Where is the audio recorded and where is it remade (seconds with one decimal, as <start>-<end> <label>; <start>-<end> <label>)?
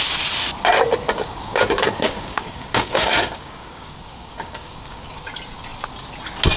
0.0-1.2 recorded; 1.2-5.2 remade; 5.2-6.6 recorded